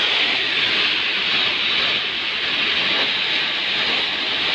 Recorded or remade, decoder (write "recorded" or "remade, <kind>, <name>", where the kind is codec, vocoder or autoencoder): recorded